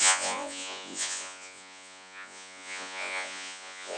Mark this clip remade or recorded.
remade